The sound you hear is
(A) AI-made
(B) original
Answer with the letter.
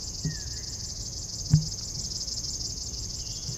B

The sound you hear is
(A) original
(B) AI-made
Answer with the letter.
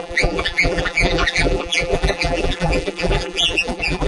B